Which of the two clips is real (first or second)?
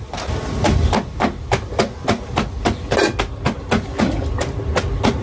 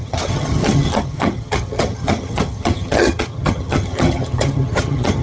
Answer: first